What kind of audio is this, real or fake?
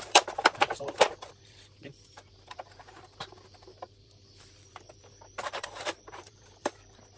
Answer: fake